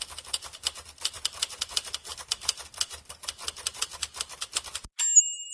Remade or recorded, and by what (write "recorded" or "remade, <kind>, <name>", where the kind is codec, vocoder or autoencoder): recorded